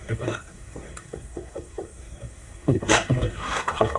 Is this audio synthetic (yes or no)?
yes